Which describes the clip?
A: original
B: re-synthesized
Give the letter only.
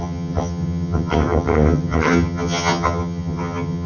B